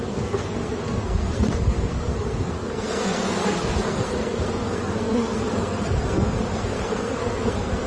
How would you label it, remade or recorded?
remade